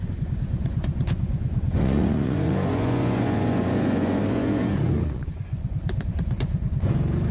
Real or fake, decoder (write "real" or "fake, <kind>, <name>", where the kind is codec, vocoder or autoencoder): fake, vocoder, Vocos